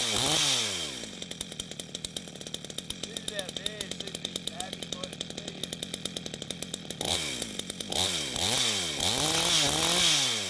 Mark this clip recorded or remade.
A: recorded